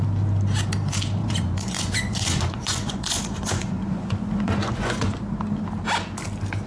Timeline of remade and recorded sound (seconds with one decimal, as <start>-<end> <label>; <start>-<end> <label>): 0.0-1.2 recorded; 1.2-5.2 remade; 5.2-6.7 recorded